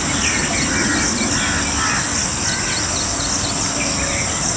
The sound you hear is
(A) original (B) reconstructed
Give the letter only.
A